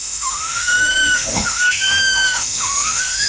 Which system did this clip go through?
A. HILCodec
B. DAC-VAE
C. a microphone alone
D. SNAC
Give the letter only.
B